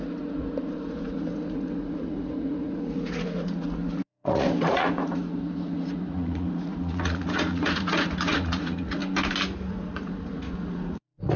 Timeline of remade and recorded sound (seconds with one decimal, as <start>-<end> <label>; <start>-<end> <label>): 0.0-9.0 remade; 9.0-9.7 recorded; 9.7-11.4 remade